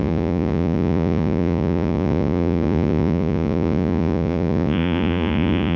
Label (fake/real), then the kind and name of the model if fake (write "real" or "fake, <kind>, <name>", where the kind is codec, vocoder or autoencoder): fake, vocoder, Vocos